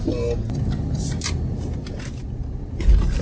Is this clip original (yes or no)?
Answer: yes